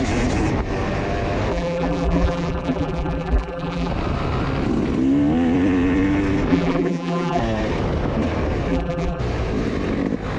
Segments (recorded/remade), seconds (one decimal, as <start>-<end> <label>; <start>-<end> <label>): 0.0-1.5 recorded; 1.5-3.9 remade; 3.9-6.5 recorded; 6.5-7.4 remade; 7.4-8.7 recorded; 8.7-9.2 remade; 9.2-10.4 recorded